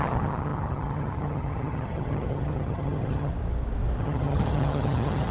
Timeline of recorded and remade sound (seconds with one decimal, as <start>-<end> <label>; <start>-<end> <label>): 0.0-3.3 remade; 3.3-4.0 recorded; 4.0-5.3 remade